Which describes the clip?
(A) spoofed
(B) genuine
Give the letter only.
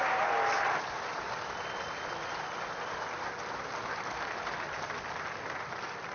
B